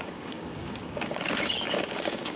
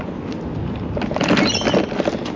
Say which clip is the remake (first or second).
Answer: first